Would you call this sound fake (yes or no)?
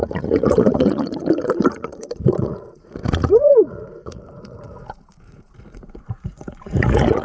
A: yes